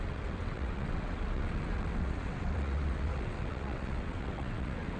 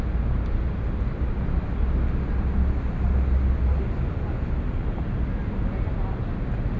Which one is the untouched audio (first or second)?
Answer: second